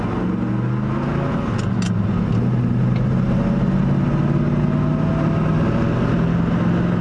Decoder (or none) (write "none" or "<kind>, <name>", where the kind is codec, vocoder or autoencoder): none